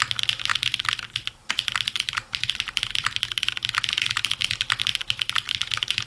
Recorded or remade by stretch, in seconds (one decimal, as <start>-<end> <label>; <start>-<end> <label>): 0.0-0.5 recorded; 0.5-3.2 remade; 3.2-4.9 recorded; 4.9-5.5 remade; 5.5-6.1 recorded

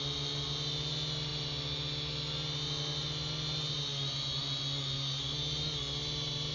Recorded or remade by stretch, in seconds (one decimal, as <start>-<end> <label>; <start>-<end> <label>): 0.0-6.5 recorded

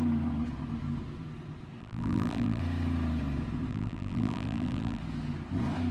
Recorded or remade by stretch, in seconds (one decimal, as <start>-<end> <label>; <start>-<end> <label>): 0.0-1.8 recorded; 1.8-2.6 remade; 2.6-3.7 recorded; 3.7-5.0 remade; 5.0-5.9 recorded

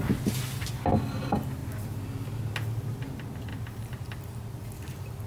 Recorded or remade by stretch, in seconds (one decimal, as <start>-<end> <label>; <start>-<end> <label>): 0.0-3.5 recorded; 3.5-5.3 remade